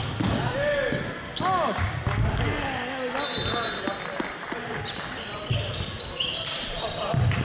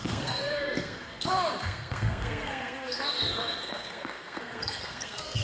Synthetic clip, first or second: second